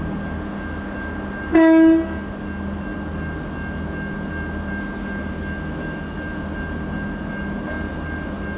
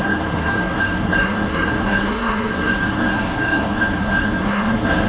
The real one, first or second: first